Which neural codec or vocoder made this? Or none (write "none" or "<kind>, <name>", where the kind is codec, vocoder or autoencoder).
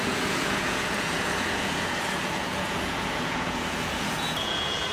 vocoder, Vocos